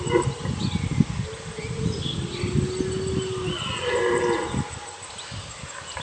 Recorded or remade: recorded